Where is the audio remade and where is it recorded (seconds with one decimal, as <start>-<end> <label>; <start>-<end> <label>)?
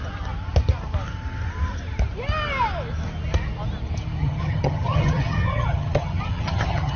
0.0-4.2 recorded; 4.2-7.0 remade